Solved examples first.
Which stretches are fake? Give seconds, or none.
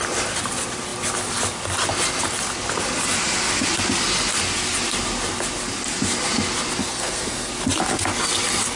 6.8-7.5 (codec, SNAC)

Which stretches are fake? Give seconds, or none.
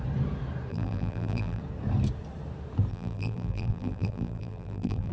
0.7-1.6 (vocoder, BigVGAN v2); 2.9-5.1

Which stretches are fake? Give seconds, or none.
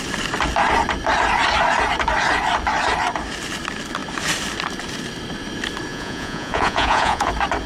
5.9-7.3 (vocoder, Vocos)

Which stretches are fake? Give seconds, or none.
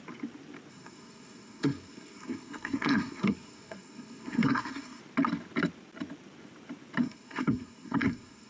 0.7-5.0 (codec, SNAC); 7.0-8.5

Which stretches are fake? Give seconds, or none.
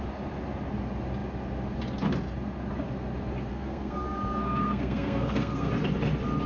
3.5-5.7 (codec, SNAC)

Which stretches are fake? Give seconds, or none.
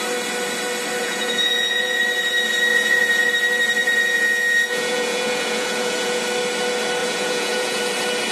1.0-2.0 (vocoder, Vocos); 2.7-3.3; 3.8-6.2; 7.0-7.8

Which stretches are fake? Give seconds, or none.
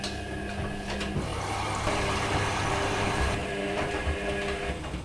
1.3-4.3 (vocoder, BigVGAN v2)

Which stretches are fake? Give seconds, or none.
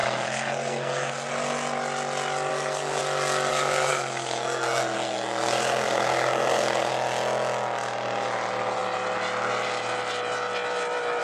0.0-1.3 (codec, SNAC); 2.5-3.0; 3.5-6.9